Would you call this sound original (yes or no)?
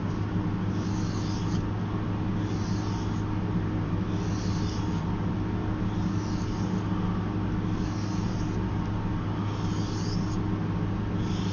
yes